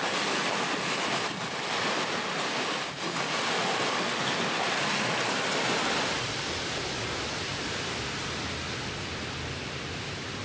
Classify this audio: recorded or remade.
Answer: recorded